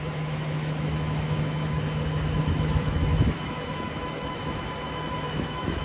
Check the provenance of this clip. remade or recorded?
remade